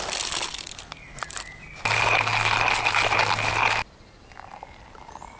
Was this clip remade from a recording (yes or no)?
no